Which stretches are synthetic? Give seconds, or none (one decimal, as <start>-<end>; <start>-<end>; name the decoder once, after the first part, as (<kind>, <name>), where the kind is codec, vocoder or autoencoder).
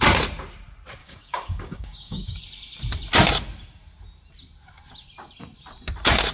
1.0-2.4 (codec, DAC)